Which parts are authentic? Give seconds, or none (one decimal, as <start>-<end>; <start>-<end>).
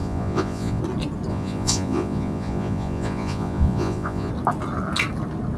0.8-1.3; 4.3-5.6